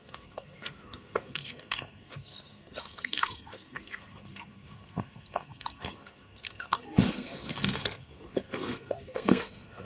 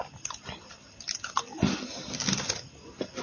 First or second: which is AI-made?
first